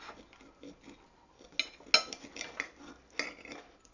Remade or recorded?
recorded